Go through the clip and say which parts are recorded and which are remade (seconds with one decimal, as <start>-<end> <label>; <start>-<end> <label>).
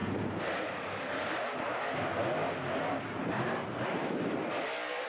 0.0-1.8 remade; 1.8-2.8 recorded; 2.8-4.4 remade; 4.4-5.1 recorded